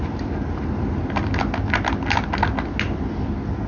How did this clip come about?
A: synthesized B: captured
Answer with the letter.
B